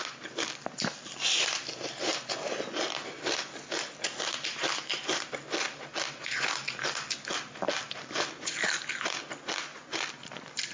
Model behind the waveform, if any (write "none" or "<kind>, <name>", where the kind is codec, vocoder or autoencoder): none